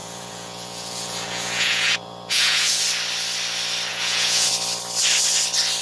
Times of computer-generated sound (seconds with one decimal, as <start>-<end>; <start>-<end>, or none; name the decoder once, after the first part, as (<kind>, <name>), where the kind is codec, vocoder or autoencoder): 0.0-2.8 (vocoder, Vocos); 3.9-4.5